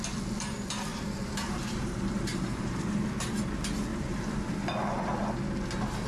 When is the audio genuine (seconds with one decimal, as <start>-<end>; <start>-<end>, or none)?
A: 0.0-0.9; 3.3-3.9; 4.4-6.1